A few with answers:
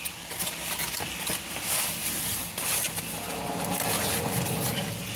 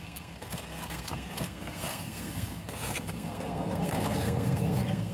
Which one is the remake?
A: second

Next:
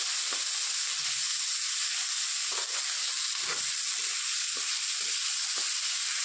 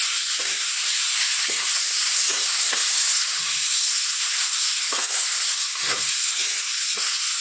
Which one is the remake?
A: second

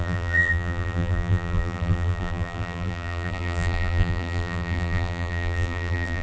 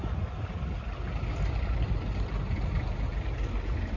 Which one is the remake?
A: first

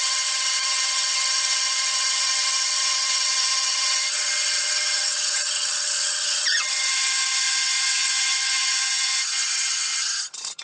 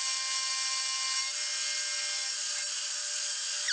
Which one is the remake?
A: first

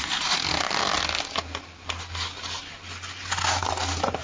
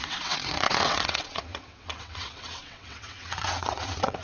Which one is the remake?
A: second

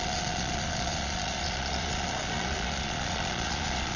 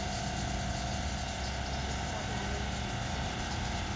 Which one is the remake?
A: first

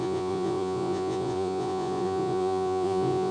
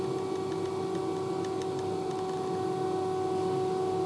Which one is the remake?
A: first